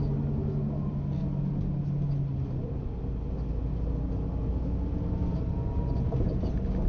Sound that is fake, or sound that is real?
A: real